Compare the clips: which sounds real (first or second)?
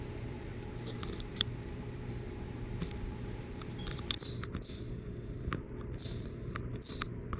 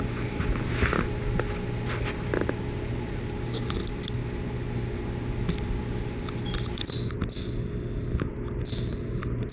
second